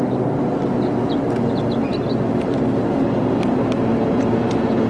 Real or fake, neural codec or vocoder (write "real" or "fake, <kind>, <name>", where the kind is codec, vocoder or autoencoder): real